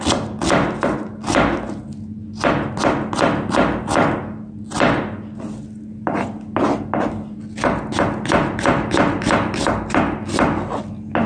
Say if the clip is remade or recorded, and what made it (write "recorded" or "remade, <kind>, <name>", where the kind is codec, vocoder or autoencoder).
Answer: recorded